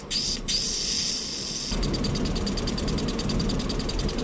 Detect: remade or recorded recorded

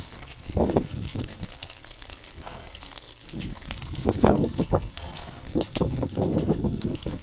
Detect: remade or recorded remade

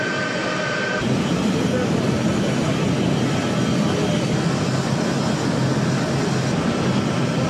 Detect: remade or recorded recorded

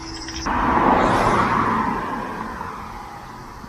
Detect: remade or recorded recorded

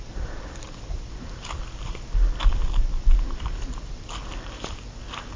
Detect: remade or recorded recorded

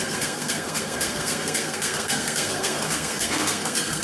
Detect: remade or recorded remade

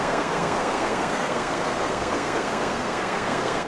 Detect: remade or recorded remade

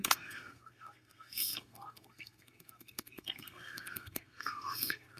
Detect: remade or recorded remade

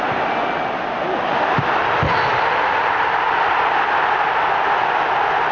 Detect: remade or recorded recorded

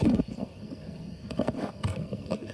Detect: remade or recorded remade